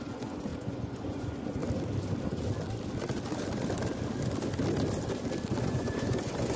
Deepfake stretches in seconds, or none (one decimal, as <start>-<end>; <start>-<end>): 0.0-1.6; 5.6-6.6